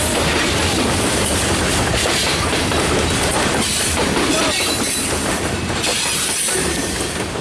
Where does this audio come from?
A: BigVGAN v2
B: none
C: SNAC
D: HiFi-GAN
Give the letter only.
A